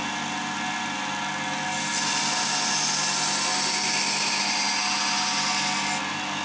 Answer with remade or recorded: recorded